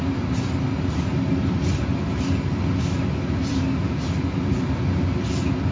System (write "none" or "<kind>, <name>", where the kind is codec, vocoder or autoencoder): none